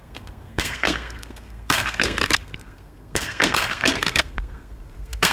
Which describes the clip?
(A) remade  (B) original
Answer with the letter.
A